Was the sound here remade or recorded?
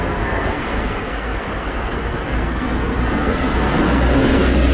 remade